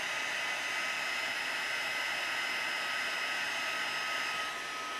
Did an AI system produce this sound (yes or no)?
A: no